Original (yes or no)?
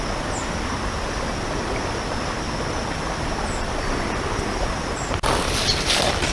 yes